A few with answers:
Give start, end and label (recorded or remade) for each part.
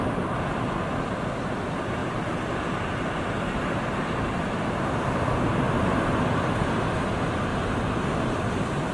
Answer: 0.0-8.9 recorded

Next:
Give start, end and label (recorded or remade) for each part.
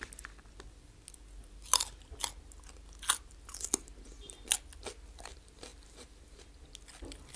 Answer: 0.0-7.4 recorded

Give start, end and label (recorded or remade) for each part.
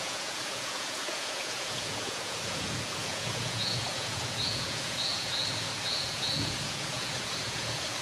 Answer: 0.0-8.0 remade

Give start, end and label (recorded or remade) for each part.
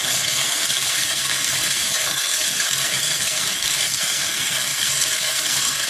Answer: 0.0-5.9 remade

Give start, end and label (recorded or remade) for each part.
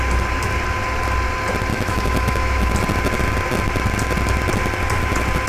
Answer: 0.0-1.7 recorded; 1.7-2.7 remade; 2.7-5.5 recorded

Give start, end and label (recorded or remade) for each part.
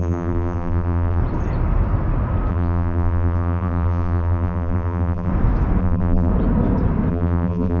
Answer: 0.0-1.2 remade; 1.2-2.5 recorded; 2.5-5.3 remade; 5.3-5.8 recorded; 5.8-6.3 remade; 6.3-7.1 recorded; 7.1-7.8 remade